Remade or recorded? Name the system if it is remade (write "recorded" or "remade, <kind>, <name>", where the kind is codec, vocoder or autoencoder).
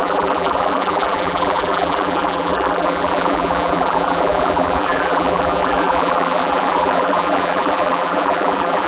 remade, vocoder, BigVGAN v2